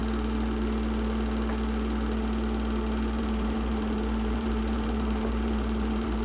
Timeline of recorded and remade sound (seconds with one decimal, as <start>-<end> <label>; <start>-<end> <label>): 0.0-3.2 recorded; 3.2-6.2 remade